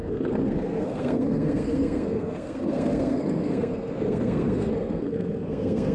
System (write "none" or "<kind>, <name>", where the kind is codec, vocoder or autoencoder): codec, SNAC